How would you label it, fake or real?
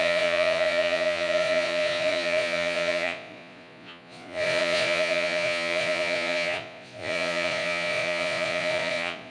fake